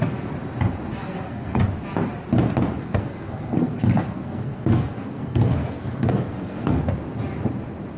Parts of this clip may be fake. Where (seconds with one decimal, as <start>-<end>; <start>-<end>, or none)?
1.0-1.6; 2.8-6.8